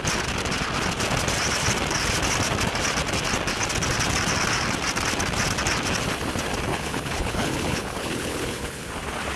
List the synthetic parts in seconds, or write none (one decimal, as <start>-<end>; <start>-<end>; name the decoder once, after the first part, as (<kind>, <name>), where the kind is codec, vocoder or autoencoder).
6.7-8.9 (codec, HILCodec)